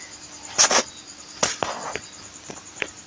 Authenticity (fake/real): real